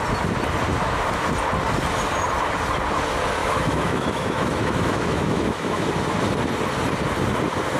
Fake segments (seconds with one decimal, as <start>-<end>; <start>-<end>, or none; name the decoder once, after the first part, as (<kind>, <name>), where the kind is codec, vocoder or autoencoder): 3.4-5.9 (autoencoder, DAC-VAE)